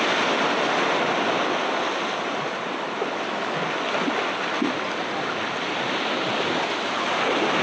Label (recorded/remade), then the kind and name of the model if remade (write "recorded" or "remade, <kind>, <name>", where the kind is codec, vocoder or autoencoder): recorded